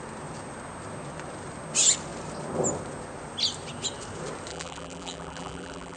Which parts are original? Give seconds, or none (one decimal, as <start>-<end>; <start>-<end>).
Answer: 0.0-4.5